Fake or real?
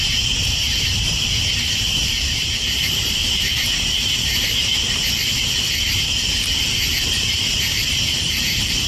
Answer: fake